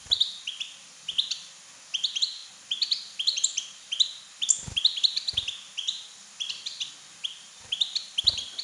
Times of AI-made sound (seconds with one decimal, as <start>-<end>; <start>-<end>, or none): none